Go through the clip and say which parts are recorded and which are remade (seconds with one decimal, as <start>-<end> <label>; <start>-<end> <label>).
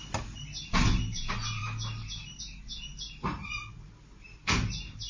0.0-5.1 recorded